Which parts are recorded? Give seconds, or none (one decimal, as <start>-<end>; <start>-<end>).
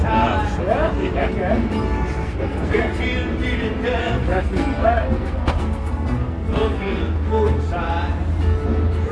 0.0-2.2; 2.8-4.0; 7.7-9.1